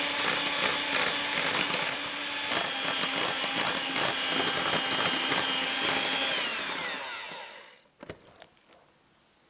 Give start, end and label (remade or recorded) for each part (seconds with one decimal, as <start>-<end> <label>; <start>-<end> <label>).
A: 0.0-9.5 recorded